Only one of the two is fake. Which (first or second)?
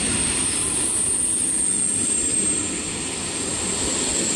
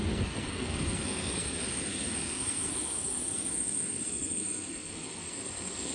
second